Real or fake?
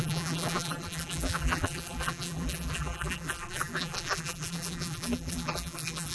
fake